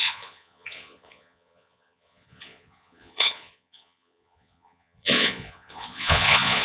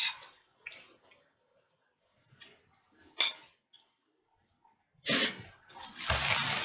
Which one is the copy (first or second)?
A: first